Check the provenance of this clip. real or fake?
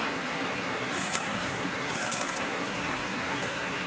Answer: fake